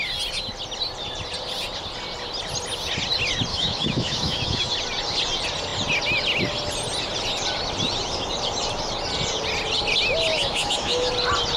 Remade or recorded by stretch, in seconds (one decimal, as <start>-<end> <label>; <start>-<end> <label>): 0.0-3.5 recorded; 3.5-4.7 remade; 4.7-10.3 recorded; 10.3-11.1 remade; 11.1-11.6 recorded